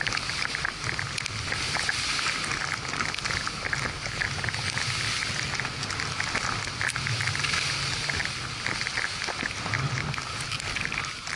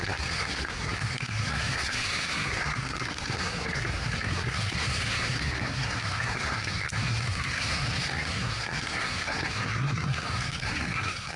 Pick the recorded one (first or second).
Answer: first